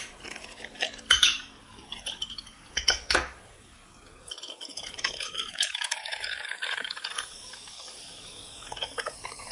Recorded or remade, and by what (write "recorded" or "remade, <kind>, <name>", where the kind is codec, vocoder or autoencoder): remade, codec, DAC